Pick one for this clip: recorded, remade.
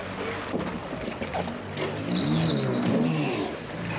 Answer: recorded